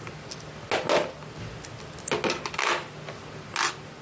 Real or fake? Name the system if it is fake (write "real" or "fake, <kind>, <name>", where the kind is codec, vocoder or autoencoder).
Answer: real